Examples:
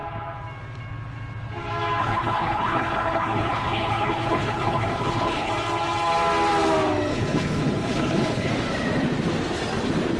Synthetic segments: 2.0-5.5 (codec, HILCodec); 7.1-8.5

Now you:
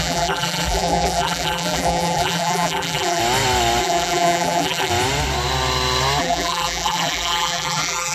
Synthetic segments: 0.0-3.2 (vocoder, BigVGAN v2); 3.8-4.9; 6.2-8.1